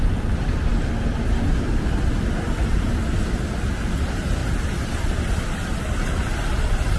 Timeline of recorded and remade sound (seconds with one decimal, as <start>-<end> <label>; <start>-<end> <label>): 0.0-7.0 recorded